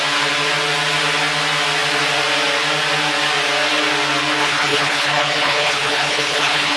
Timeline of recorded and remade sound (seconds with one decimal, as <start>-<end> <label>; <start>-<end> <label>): 0.0-4.4 recorded; 4.4-6.8 remade